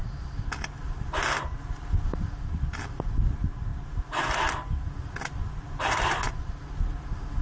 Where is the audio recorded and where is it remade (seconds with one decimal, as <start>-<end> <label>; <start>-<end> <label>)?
0.0-7.4 recorded